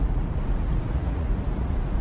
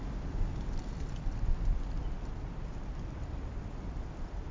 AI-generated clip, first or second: first